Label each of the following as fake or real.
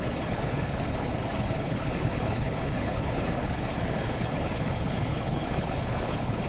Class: fake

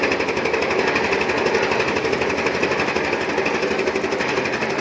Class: real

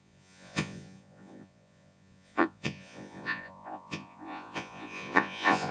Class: fake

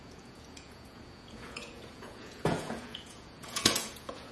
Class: fake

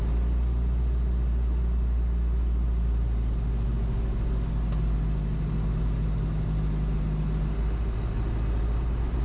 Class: real